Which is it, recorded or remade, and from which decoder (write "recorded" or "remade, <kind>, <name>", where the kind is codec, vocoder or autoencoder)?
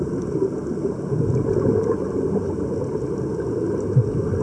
recorded